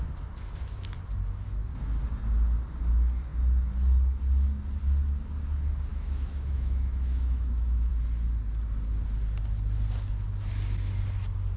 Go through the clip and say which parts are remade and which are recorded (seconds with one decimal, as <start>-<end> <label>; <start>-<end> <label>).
0.0-5.9 recorded; 5.9-7.9 remade; 7.9-11.6 recorded